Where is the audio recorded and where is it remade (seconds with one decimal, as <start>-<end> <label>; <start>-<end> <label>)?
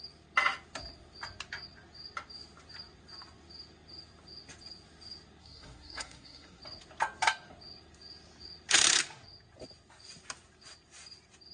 0.0-5.4 recorded; 5.4-6.6 remade; 6.6-11.5 recorded